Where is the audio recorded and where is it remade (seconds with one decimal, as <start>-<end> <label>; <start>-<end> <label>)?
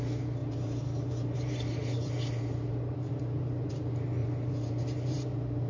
0.0-0.4 recorded; 0.4-3.7 remade; 3.7-4.2 recorded; 4.2-5.7 remade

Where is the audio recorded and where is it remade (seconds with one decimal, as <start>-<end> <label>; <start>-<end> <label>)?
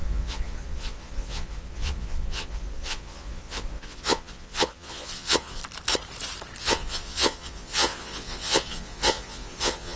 0.0-5.6 remade; 5.6-6.6 recorded; 6.6-10.0 remade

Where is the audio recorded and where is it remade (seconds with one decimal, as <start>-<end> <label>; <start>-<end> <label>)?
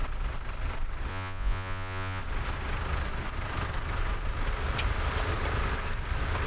0.0-1.1 recorded; 1.1-2.2 remade; 2.2-6.5 recorded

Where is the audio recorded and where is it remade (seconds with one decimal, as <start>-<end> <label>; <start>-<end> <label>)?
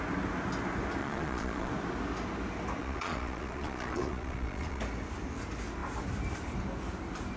0.0-1.0 recorded; 1.0-1.7 remade; 1.7-2.8 recorded; 2.8-4.8 remade; 4.8-7.4 recorded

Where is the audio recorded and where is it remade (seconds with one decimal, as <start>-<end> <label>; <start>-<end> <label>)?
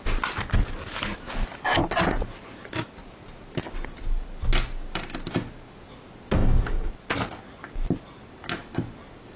0.0-9.4 recorded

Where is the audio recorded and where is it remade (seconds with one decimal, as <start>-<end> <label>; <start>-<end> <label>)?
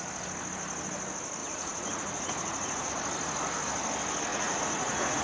0.0-1.4 recorded; 1.4-2.9 remade; 2.9-4.3 recorded; 4.3-5.2 remade